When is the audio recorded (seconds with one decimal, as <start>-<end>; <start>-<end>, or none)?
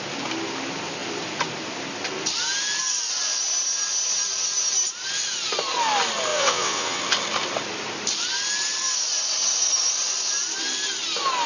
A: 0.0-6.3; 7.0-11.5